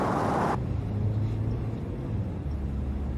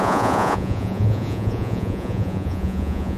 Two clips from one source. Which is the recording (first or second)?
first